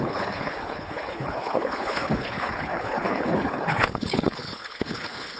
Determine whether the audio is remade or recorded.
remade